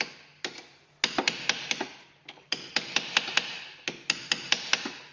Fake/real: real